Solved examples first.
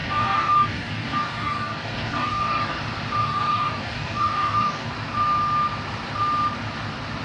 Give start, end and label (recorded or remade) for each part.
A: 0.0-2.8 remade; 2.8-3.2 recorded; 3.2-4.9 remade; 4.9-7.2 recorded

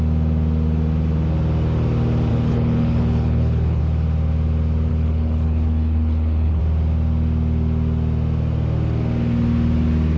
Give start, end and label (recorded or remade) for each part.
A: 0.0-2.3 recorded; 2.3-3.8 remade; 3.8-4.9 recorded; 4.9-6.6 remade; 6.6-10.2 recorded

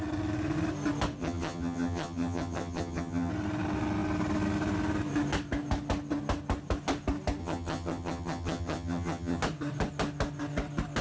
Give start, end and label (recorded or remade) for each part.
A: 0.0-1.2 recorded; 1.2-3.3 remade; 3.3-7.4 recorded; 7.4-9.4 remade; 9.4-11.0 recorded

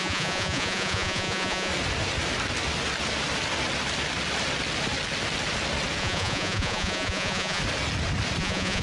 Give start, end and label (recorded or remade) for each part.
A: 0.0-1.7 remade; 1.7-6.0 recorded; 6.0-7.6 remade; 7.6-8.4 recorded; 8.4-8.8 remade

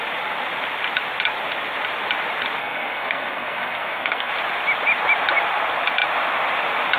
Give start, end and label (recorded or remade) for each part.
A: 0.0-2.6 recorded; 2.6-4.3 remade; 4.3-7.0 recorded